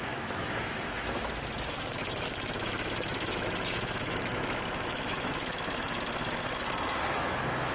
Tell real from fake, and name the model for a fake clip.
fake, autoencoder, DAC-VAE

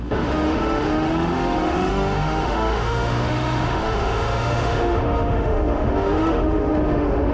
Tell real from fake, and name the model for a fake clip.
fake, autoencoder, DAC-VAE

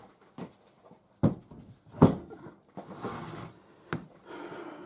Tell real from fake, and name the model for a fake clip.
real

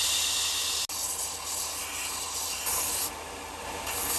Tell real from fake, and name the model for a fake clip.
real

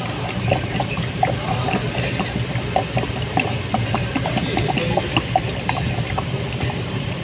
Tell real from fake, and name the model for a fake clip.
real